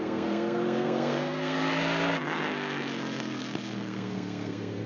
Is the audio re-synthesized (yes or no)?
yes